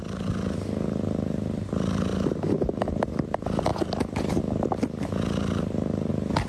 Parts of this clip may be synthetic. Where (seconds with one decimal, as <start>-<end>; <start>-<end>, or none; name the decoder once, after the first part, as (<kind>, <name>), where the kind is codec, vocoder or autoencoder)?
none